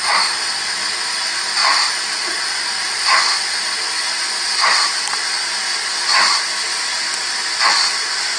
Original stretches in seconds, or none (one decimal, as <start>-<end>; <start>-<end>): 0.0-8.4